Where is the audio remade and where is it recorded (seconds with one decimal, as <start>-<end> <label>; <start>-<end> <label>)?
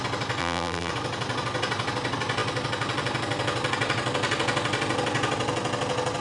0.0-0.4 recorded; 0.4-0.9 remade; 0.9-6.2 recorded